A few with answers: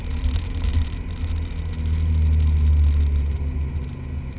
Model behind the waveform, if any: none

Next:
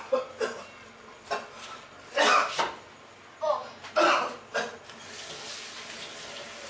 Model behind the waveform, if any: none